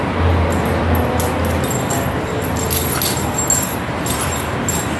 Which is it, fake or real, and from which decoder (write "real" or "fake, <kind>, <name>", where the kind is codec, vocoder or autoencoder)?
real